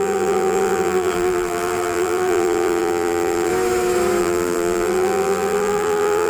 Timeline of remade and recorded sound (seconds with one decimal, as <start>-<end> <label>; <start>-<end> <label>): 0.0-3.5 remade; 3.5-4.2 recorded; 4.2-6.3 remade